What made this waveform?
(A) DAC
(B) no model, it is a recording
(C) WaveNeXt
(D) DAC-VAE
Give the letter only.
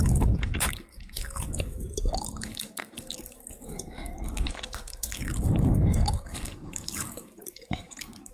A